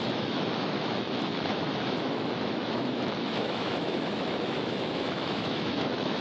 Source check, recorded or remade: remade